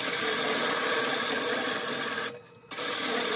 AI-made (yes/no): yes